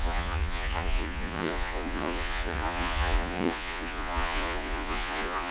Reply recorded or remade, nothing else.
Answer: remade